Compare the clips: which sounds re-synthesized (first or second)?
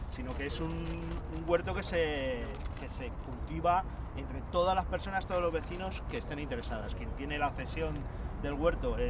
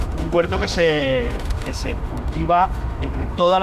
second